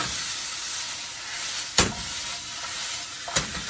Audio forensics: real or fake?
real